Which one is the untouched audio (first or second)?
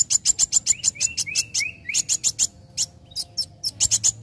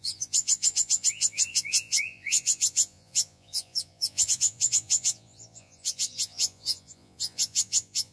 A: first